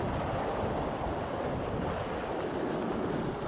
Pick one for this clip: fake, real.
real